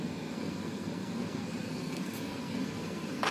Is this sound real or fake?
fake